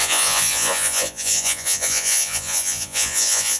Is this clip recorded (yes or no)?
no